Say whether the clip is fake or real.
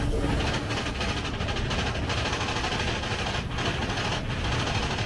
real